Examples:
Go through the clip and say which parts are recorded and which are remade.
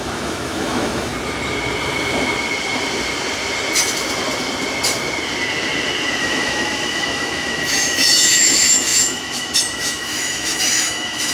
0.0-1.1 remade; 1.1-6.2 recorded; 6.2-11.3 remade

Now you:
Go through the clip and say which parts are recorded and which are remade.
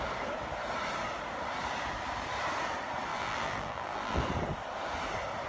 0.0-3.1 recorded; 3.1-4.2 remade; 4.2-5.5 recorded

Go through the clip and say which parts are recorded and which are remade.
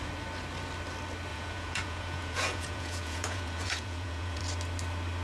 0.0-1.3 recorded; 1.3-4.4 remade; 4.4-5.2 recorded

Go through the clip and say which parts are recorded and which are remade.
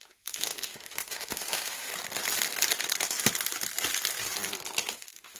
0.0-1.9 remade; 1.9-4.9 recorded; 4.9-5.4 remade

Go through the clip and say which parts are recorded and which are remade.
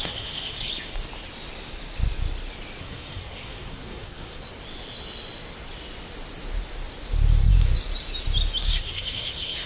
0.0-0.7 remade; 0.7-2.8 recorded; 2.8-4.5 remade; 4.5-8.6 recorded; 8.6-9.7 remade